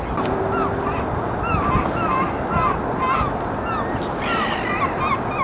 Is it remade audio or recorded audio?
recorded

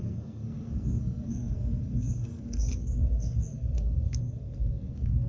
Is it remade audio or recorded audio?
remade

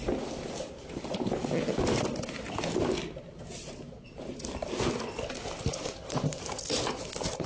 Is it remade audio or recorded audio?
recorded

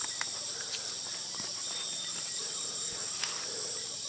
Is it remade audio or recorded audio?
remade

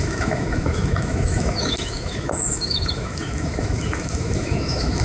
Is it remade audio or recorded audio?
remade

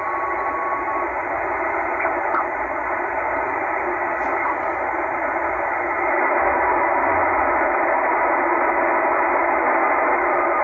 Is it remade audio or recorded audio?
recorded